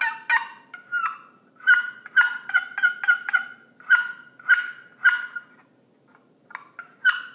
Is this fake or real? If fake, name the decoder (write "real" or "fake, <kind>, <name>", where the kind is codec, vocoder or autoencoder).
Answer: real